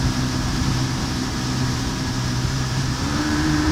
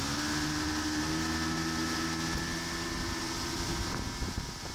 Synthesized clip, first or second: first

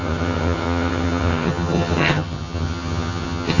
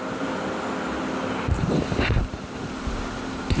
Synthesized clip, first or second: first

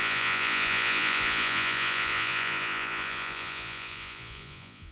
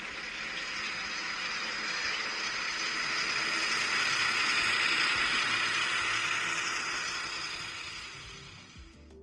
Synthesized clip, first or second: first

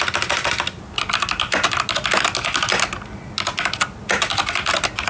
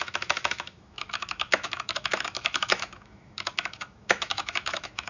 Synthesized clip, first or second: second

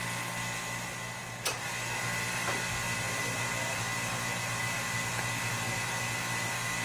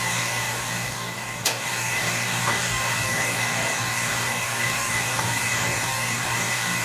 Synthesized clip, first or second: second